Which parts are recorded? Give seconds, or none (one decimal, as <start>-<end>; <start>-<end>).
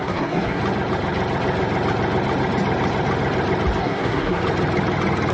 0.6-3.8; 4.4-5.3